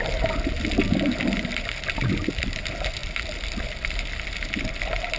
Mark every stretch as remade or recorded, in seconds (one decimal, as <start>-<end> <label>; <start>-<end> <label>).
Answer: 0.0-5.2 recorded